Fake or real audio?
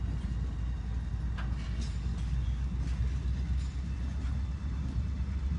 real